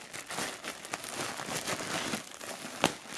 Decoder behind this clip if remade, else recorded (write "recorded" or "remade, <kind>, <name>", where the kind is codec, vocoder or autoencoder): recorded